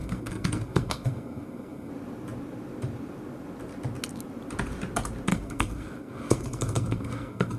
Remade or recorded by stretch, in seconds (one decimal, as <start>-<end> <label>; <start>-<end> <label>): 0.0-1.9 remade; 1.9-5.3 recorded; 5.3-7.6 remade